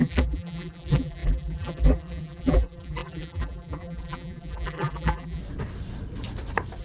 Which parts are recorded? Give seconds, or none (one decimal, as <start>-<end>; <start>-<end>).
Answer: 5.4-6.8